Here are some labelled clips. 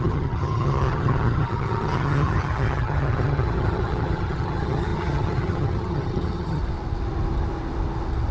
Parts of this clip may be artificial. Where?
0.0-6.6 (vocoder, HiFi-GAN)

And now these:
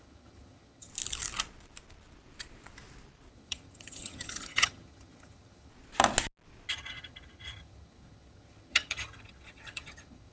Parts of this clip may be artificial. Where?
0.0-0.9 (vocoder, HiFi-GAN); 3.3-5.7; 6.7-10.3

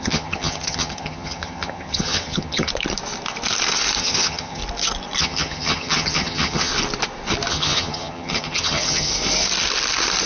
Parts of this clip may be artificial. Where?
0.0-2.7 (vocoder, HiFi-GAN); 4.0-4.6; 5.2-6.7; 7.5-9.1

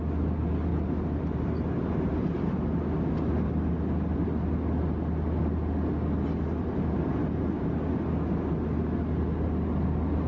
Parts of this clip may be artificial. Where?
none

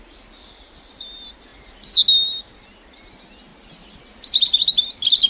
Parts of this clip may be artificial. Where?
none

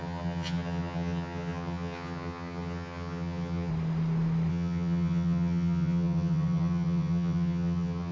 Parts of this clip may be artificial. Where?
0.0-3.7 (vocoder, HiFi-GAN); 4.5-8.1

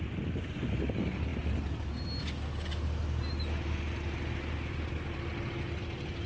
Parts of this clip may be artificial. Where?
none

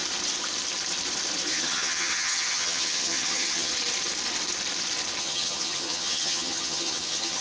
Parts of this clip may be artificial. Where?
1.5-3.7 (vocoder, HiFi-GAN); 5.2-7.4